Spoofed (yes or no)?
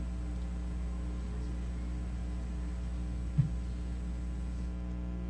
no